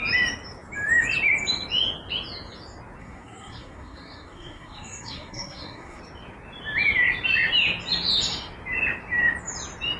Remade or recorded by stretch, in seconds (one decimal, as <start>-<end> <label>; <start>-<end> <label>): 0.0-3.0 recorded; 3.0-6.0 remade; 6.0-10.0 recorded